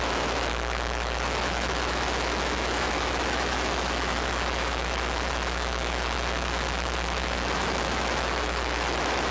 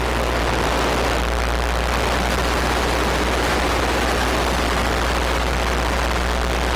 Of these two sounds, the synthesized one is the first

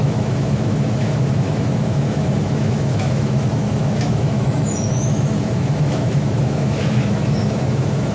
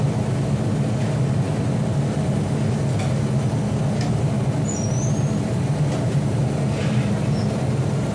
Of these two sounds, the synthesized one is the first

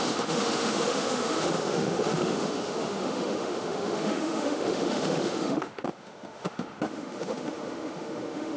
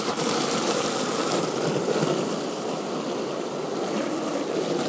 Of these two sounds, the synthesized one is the first